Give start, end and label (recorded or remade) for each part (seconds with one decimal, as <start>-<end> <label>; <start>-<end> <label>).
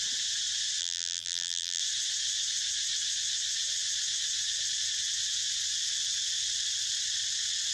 0.0-0.8 recorded; 0.8-1.8 remade; 1.8-7.7 recorded